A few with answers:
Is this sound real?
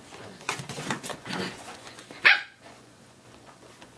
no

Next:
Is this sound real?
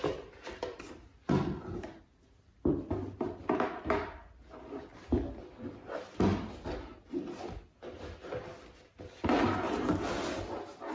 yes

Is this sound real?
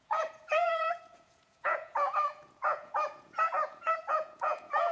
no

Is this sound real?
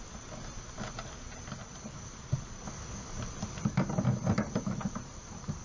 yes